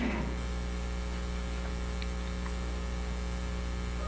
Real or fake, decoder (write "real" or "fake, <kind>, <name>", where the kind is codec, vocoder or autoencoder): real